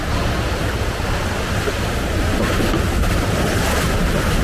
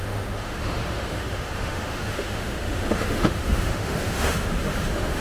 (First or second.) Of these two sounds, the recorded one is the first